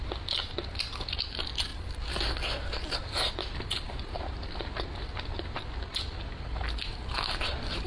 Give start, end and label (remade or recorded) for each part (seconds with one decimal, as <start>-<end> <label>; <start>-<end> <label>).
0.0-7.9 recorded